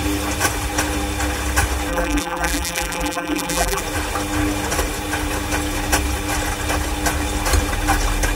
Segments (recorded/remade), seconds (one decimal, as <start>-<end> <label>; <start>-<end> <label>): 0.0-1.9 recorded; 1.9-3.8 remade; 3.8-8.4 recorded